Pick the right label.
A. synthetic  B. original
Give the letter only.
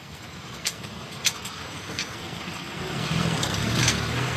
A